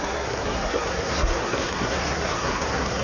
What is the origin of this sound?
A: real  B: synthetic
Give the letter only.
B